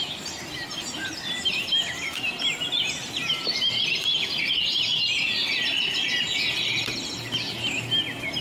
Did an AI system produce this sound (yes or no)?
no